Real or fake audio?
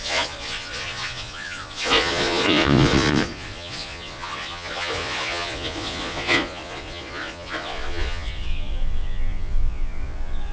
fake